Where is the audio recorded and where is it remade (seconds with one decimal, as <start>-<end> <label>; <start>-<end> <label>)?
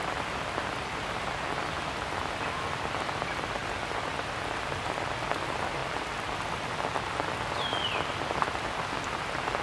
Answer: 0.0-3.6 recorded; 3.6-4.1 remade; 4.1-9.6 recorded